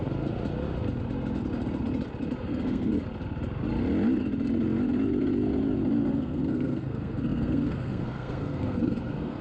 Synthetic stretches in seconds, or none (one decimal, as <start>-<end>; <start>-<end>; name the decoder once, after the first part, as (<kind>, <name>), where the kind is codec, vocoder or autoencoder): 2.4-2.9 (codec, SNAC); 6.1-9.4